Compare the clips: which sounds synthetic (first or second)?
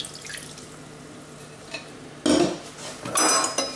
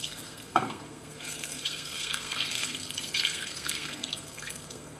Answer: second